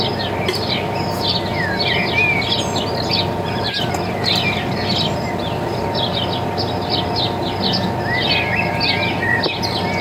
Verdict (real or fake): real